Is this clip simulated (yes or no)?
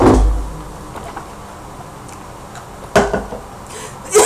no